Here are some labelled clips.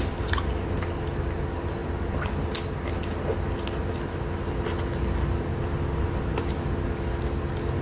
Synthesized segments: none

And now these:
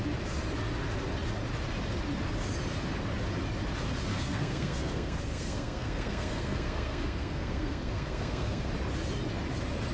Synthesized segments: 4.1-8.7 (codec, SNAC)

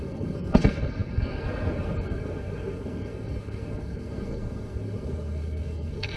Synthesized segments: 0.0-6.2 (codec, SNAC)

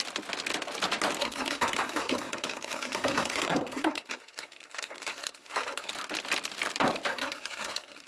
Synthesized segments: 1.2-5.9 (codec, SNAC); 7.1-8.1

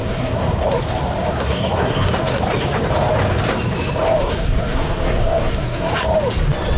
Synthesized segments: 0.0-0.7 (codec, SNAC); 1.2-2.1; 4.2-5.9

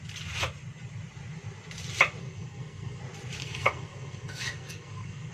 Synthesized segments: 2.2-3.0 (codec, SNAC); 3.4-5.3

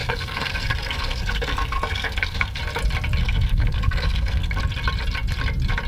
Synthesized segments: 0.0-2.6 (codec, SNAC); 3.2-4.6

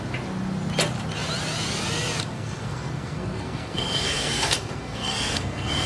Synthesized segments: 2.3-5.9 (codec, SNAC)